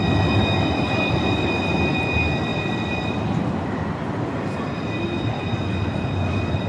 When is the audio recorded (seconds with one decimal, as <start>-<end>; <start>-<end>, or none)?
0.0-6.7